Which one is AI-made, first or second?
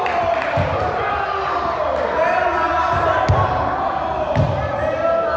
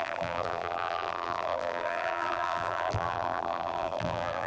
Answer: second